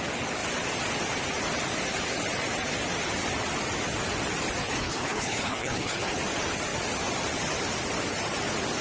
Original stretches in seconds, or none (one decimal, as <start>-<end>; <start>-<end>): 0.0-4.6; 6.2-8.8